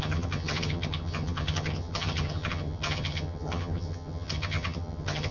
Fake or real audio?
fake